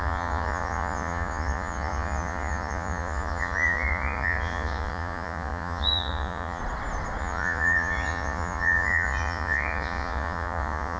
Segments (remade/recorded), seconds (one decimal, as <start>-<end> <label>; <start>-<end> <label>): 0.0-6.6 remade; 6.6-7.2 recorded; 7.2-11.0 remade